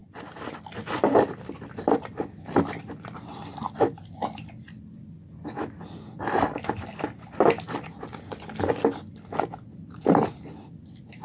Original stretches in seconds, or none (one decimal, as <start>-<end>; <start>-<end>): 0.0-11.2